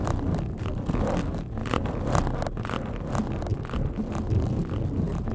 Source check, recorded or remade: recorded